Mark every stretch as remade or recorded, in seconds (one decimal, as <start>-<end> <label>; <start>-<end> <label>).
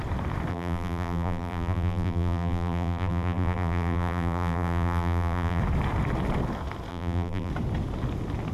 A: 0.0-0.5 recorded; 0.5-5.6 remade; 5.6-6.9 recorded; 6.9-7.5 remade; 7.5-8.5 recorded